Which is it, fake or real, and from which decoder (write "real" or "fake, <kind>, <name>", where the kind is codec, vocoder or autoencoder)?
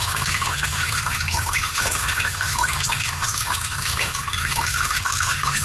fake, autoencoder, DAC-VAE